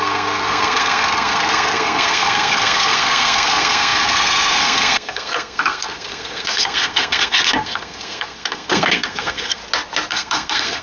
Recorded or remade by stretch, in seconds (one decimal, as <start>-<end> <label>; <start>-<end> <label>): 0.0-9.6 remade; 9.6-10.1 recorded; 10.1-10.8 remade